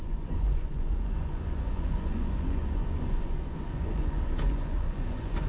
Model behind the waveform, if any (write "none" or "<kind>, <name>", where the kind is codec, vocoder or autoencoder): vocoder, Vocos